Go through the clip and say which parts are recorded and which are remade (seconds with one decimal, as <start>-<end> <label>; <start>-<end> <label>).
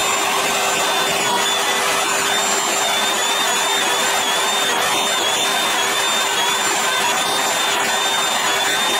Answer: 0.0-9.0 recorded